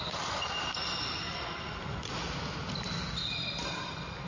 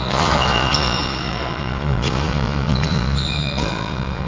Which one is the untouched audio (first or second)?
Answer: first